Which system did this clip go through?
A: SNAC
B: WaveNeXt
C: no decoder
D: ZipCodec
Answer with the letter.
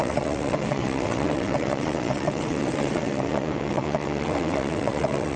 B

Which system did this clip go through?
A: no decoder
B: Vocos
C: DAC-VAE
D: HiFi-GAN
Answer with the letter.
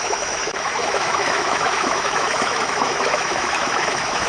C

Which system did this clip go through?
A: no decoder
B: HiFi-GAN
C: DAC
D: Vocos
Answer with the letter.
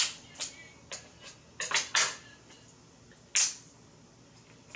A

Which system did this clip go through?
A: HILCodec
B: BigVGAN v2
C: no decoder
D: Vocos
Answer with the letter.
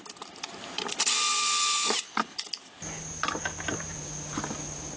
C